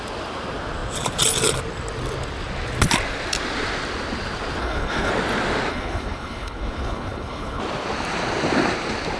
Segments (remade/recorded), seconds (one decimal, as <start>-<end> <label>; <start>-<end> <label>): 0.0-4.6 recorded; 4.6-5.1 remade; 5.1-5.7 recorded; 5.7-7.6 remade; 7.6-9.2 recorded

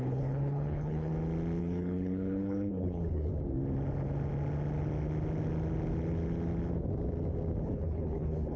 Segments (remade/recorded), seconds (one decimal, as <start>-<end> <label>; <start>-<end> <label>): 0.0-1.1 remade; 1.1-1.6 recorded; 1.6-3.3 remade; 3.3-7.6 recorded; 7.6-8.6 remade

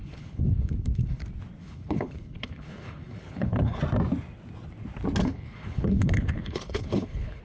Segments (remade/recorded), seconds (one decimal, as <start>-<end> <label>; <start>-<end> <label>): 0.0-1.2 remade; 1.2-1.6 recorded; 1.6-3.8 remade; 3.8-5.2 recorded; 5.2-7.4 remade

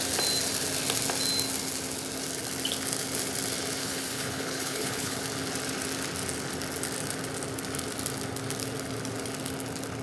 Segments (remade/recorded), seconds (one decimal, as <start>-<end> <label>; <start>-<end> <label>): 0.0-3.8 recorded; 3.8-5.2 remade; 5.2-10.0 recorded

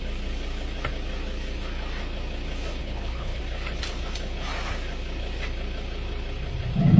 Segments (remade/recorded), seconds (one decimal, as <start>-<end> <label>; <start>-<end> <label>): 0.0-2.8 recorded; 2.8-3.4 remade; 3.4-7.0 recorded

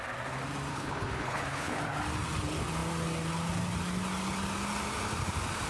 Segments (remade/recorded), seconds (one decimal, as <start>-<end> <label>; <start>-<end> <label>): 0.0-0.7 recorded; 0.7-1.8 remade; 1.8-5.7 recorded

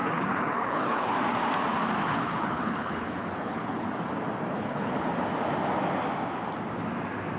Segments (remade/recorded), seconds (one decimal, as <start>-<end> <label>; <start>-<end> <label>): 0.0-1.1 remade; 1.1-2.0 recorded; 2.0-3.9 remade; 3.9-4.5 recorded; 4.5-5.1 remade; 5.1-7.4 recorded